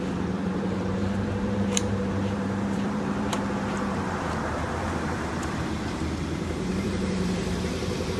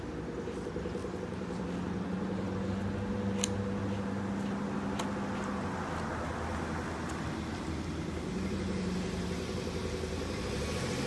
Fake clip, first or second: first